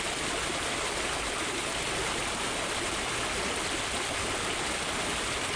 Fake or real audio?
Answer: real